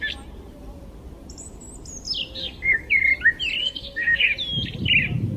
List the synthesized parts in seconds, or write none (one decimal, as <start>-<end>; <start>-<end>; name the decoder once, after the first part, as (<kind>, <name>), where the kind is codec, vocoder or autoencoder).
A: 2.4-2.9 (codec, SNAC); 3.6-4.3